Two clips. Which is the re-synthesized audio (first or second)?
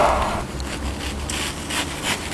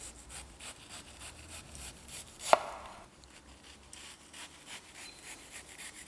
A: second